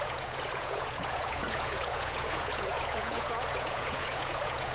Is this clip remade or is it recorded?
remade